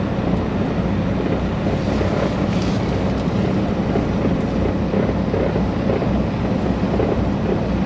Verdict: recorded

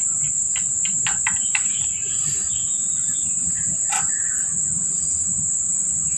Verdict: recorded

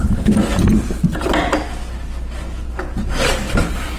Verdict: recorded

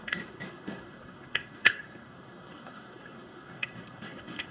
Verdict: remade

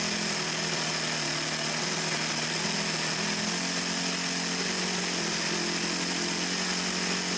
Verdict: recorded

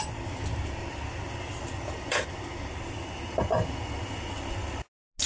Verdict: recorded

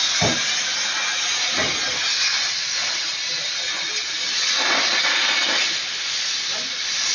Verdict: recorded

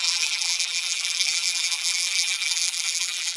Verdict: remade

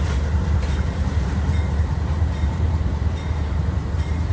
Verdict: remade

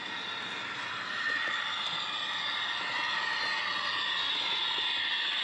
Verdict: recorded